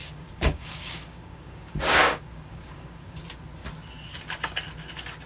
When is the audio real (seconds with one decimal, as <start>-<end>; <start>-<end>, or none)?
3.2-5.3